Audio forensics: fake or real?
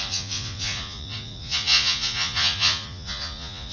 fake